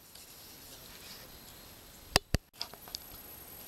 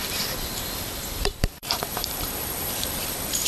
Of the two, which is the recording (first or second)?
first